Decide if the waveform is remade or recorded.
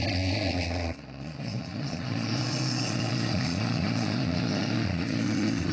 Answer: remade